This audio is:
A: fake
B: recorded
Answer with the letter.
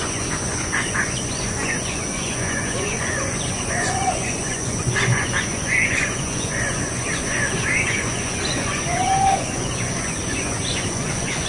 A